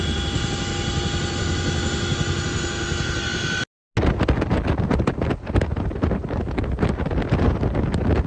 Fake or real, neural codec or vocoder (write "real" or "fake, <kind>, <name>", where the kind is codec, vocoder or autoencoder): real